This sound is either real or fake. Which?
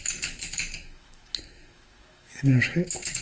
fake